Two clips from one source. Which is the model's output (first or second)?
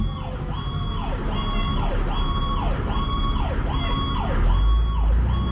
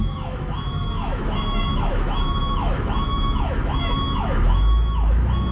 second